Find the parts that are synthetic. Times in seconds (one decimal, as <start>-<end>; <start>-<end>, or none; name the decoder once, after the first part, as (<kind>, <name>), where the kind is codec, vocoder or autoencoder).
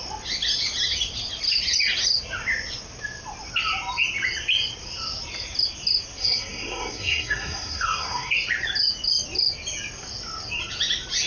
6.2-8.3 (codec, SNAC)